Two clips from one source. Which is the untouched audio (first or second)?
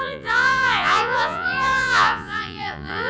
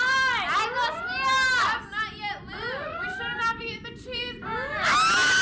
second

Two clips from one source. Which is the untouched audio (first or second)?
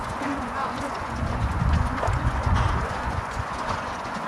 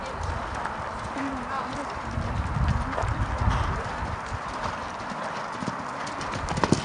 second